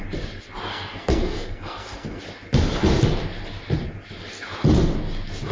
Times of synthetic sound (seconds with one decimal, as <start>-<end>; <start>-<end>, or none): 0.7-2.2